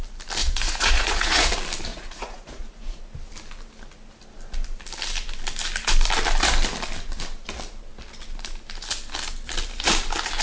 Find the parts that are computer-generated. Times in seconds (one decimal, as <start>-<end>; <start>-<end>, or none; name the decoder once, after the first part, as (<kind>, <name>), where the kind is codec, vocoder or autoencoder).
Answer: 0.4-1.5 (vocoder, Vocos); 1.9-3.0